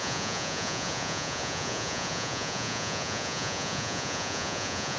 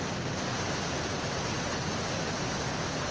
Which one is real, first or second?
second